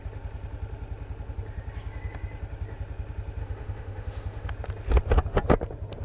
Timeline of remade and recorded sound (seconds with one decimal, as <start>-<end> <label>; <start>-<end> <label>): 0.0-3.4 recorded; 3.4-4.5 remade; 4.5-6.0 recorded